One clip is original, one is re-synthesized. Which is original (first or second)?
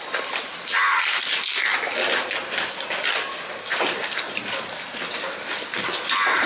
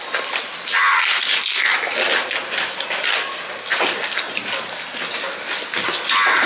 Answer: second